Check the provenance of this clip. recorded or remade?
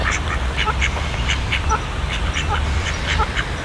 remade